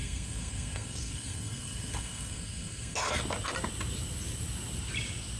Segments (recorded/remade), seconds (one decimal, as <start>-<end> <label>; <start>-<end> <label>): 0.0-3.2 remade; 3.2-5.4 recorded